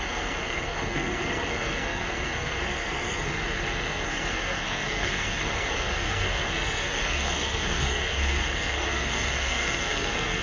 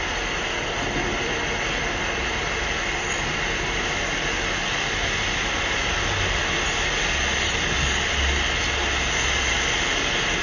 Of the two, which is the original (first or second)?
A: second